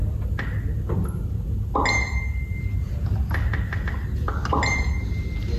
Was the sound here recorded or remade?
recorded